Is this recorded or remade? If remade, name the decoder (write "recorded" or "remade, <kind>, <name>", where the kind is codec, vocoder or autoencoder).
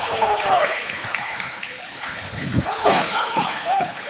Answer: remade, codec, HILCodec